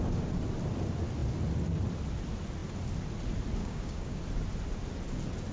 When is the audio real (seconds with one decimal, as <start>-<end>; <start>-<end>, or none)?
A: 0.0-3.6; 4.2-5.5